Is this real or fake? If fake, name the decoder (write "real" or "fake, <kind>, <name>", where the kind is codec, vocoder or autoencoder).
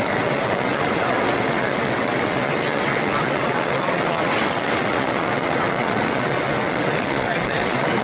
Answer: fake, vocoder, WaveNeXt